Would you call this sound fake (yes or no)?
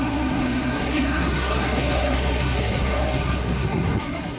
yes